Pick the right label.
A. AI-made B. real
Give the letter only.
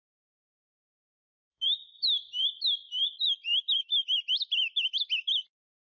A